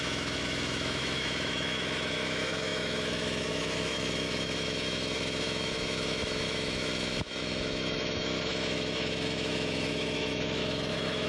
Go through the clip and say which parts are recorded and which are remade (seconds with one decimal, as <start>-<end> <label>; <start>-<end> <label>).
0.0-11.3 remade